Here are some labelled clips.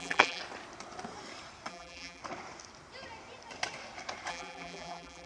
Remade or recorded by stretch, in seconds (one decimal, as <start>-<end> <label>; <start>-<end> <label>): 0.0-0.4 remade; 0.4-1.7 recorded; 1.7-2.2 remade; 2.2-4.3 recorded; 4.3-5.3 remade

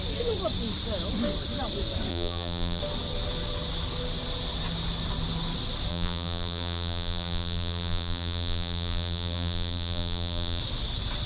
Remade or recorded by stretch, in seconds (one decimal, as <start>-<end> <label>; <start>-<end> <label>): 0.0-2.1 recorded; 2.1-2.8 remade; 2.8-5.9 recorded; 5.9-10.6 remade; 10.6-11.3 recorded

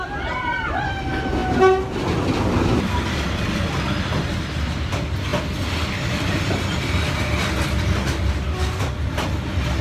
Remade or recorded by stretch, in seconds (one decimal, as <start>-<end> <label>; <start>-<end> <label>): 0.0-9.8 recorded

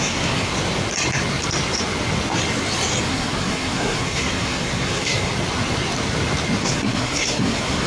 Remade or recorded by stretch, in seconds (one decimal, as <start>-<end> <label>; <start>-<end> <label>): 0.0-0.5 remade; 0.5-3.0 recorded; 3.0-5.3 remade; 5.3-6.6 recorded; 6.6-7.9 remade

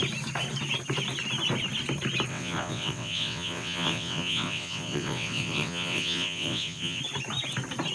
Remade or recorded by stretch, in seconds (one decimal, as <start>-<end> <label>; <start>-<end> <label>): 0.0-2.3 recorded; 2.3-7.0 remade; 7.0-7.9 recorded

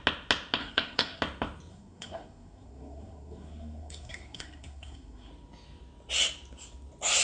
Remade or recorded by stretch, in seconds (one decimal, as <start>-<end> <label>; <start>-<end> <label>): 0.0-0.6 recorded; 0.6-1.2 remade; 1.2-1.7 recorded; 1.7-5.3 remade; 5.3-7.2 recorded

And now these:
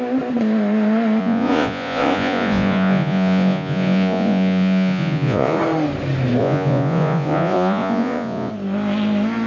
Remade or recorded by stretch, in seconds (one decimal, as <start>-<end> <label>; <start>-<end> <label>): 0.0-1.2 recorded; 1.2-5.6 remade; 5.6-6.4 recorded; 6.4-8.5 remade; 8.5-9.5 recorded